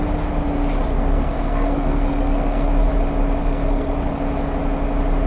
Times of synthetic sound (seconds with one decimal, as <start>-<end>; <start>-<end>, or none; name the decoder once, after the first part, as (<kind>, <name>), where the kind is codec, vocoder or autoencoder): 0.9-2.7 (codec, SNAC); 3.4-4.2